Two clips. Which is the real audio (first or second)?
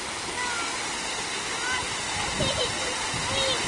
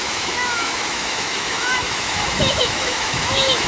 first